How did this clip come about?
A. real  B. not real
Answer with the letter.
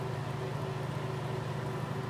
A